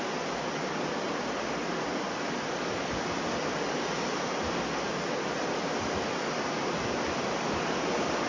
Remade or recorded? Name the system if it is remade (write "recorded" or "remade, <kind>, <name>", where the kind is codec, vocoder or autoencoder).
recorded